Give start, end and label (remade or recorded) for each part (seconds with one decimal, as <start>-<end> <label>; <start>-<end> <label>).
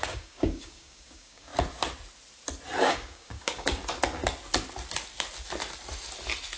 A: 0.0-1.5 remade; 1.5-2.8 recorded; 2.8-3.8 remade; 3.8-6.6 recorded